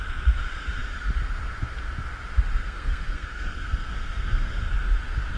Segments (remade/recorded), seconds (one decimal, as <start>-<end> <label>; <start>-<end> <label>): 0.0-2.6 recorded; 2.6-4.6 remade; 4.6-5.4 recorded